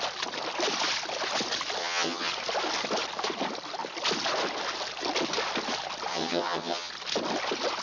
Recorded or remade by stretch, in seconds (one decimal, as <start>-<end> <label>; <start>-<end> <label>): 0.0-1.8 recorded; 1.8-2.3 remade; 2.3-6.1 recorded; 6.1-6.9 remade; 6.9-7.8 recorded